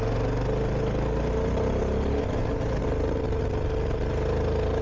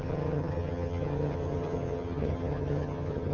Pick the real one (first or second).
first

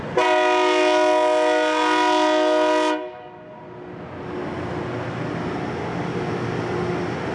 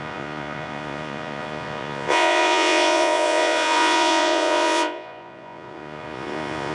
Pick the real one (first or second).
first